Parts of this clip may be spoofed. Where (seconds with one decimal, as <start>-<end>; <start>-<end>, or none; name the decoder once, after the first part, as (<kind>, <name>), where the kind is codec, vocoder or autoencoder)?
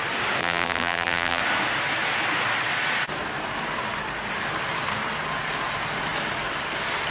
0.4-1.4 (vocoder, BigVGAN v2)